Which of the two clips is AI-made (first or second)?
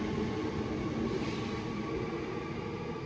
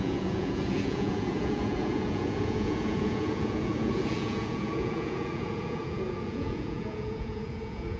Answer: second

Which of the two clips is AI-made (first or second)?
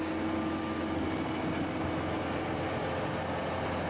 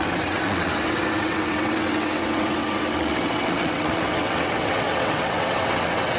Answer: second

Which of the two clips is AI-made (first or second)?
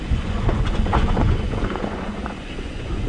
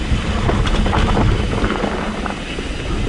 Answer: first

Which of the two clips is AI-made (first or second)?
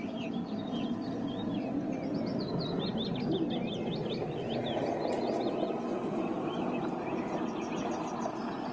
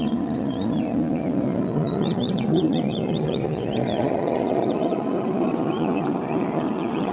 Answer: second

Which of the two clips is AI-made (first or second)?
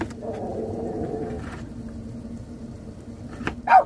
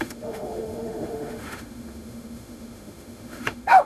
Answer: second